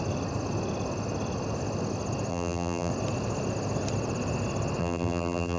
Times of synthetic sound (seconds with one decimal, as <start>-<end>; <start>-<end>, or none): 2.3-2.9; 4.8-5.6